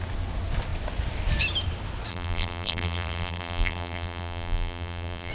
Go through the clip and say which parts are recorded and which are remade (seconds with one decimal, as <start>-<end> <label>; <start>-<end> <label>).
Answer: 0.0-2.1 recorded; 2.1-5.3 remade